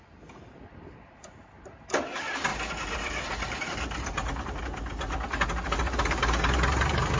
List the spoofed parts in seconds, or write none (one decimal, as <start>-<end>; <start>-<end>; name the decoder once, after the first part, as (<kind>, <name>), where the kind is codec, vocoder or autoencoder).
2.5-4.6 (vocoder, BigVGAN v2)